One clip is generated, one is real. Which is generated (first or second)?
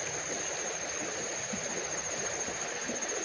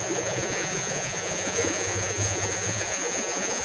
second